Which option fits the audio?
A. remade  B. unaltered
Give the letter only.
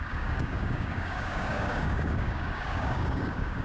A